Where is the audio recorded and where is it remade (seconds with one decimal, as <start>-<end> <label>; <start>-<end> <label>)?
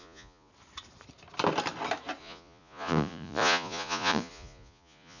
0.0-0.5 remade; 0.5-2.2 recorded; 2.2-5.2 remade